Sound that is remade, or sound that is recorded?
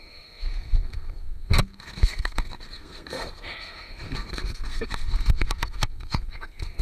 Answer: remade